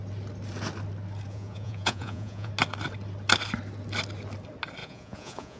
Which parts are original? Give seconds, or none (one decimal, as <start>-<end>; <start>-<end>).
0.0-1.3; 2.5-4.8